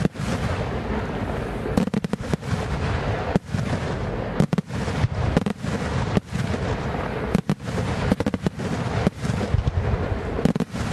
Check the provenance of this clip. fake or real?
real